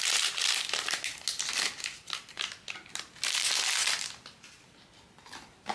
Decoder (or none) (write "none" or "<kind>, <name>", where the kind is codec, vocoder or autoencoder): none